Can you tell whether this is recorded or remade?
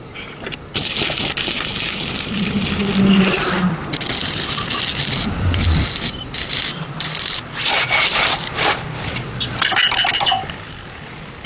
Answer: recorded